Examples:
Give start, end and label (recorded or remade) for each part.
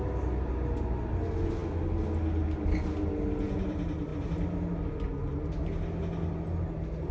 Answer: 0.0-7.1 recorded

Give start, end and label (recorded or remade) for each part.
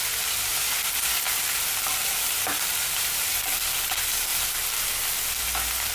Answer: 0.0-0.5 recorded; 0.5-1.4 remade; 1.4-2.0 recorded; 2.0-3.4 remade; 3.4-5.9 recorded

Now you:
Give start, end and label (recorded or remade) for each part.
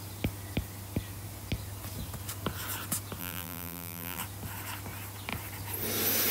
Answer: 0.0-3.2 recorded; 3.2-4.2 remade; 4.2-6.3 recorded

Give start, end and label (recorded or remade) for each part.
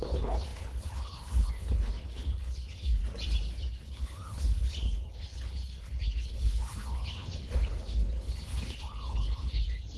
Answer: 0.0-3.0 remade; 3.0-3.7 recorded; 3.7-10.0 remade